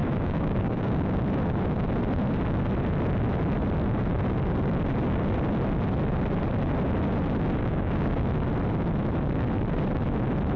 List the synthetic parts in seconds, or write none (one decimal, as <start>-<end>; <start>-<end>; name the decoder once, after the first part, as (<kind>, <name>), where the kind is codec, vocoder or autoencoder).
0.0-1.2 (codec, DAC); 7.6-8.2